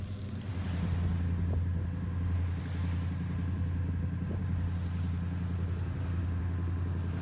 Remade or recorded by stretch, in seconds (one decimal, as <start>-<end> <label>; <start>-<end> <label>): 0.0-7.2 recorded